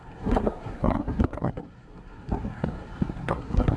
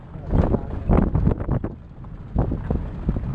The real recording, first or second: second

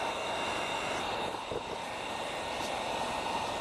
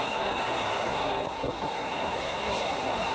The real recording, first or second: first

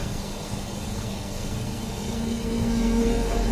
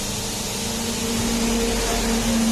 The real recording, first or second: second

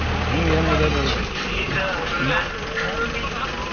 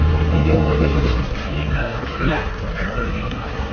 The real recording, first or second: first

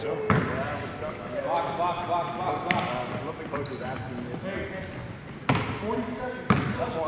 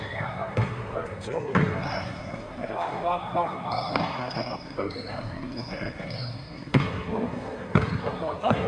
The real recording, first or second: first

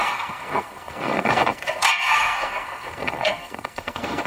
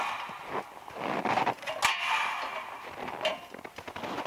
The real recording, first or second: second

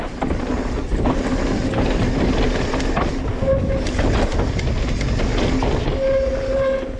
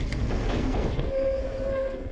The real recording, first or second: first